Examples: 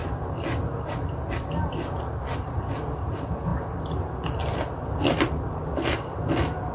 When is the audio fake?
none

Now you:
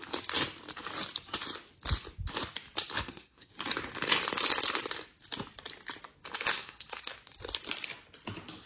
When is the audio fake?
3.0-3.5 (codec, SNAC); 6.5-7.1

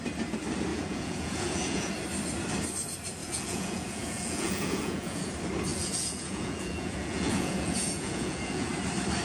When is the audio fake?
0.7-1.9 (vocoder, Vocos); 3.2-5.3; 5.7-8.7

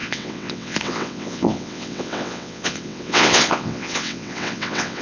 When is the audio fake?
0.0-5.0 (vocoder, WaveNeXt)